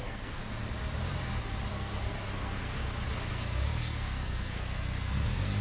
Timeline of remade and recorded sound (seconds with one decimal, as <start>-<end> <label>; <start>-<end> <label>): 0.0-0.4 remade; 0.4-1.7 recorded; 1.7-2.8 remade; 2.8-3.3 recorded; 3.3-5.6 remade